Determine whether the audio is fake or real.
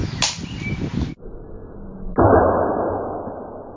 real